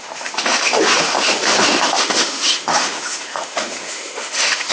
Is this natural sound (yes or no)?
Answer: no